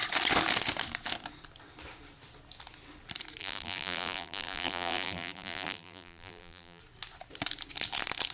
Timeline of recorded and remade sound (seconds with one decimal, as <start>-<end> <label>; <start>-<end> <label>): 0.0-3.4 recorded; 3.4-6.8 remade; 6.8-8.3 recorded